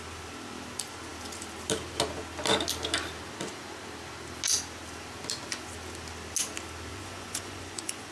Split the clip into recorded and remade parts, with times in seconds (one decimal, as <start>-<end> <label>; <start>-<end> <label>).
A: 0.0-6.9 recorded; 6.9-8.1 remade

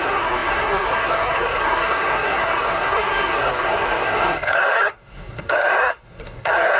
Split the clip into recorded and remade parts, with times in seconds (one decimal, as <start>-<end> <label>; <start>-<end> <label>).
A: 0.0-6.8 remade

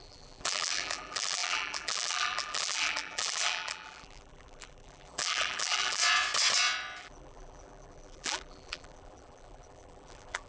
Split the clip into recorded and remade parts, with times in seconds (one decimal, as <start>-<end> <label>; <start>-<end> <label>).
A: 0.0-6.0 remade; 6.0-7.0 recorded; 7.0-10.5 remade

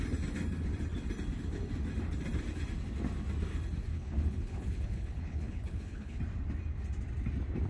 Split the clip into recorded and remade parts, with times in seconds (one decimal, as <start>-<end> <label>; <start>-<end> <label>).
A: 0.0-3.9 recorded; 3.9-6.2 remade; 6.2-7.7 recorded

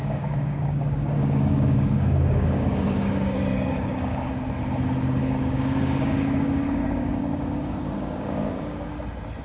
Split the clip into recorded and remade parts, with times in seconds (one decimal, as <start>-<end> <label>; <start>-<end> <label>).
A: 0.0-4.3 remade; 4.3-5.2 recorded; 5.2-8.9 remade; 8.9-9.4 recorded

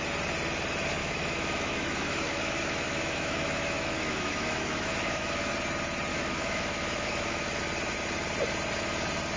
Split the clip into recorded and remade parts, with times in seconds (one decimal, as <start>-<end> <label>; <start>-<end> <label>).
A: 0.0-1.0 recorded; 1.0-5.5 remade; 5.5-6.1 recorded; 6.1-7.6 remade; 7.6-9.4 recorded